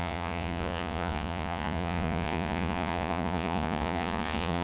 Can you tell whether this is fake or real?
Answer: fake